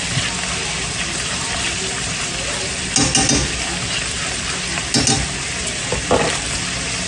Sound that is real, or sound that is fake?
real